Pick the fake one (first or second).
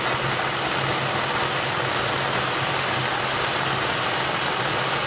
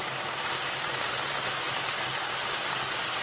second